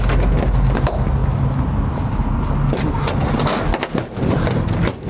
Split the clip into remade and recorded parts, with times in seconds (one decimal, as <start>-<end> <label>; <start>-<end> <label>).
0.0-5.1 recorded